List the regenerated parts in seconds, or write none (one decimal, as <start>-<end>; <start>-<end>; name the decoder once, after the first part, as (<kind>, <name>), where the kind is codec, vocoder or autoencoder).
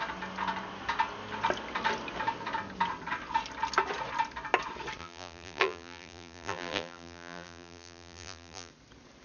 5.0-8.7 (vocoder, BigVGAN v2)